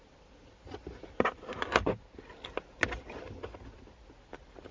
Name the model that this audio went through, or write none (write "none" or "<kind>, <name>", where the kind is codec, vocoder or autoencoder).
none